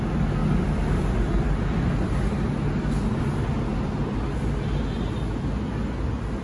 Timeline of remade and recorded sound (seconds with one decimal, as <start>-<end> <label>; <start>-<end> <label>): 0.0-6.4 recorded